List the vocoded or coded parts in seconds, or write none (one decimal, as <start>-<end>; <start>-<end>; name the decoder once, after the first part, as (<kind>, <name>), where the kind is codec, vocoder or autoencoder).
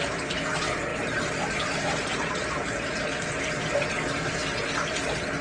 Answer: 0.9-3.0 (vocoder, BigVGAN v2)